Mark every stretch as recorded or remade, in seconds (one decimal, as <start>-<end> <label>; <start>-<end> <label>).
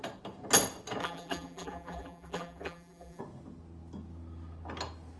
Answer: 0.0-1.0 recorded; 1.0-3.2 remade; 3.2-5.2 recorded